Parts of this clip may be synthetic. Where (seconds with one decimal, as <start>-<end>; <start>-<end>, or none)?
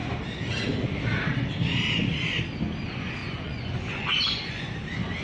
3.2-4.7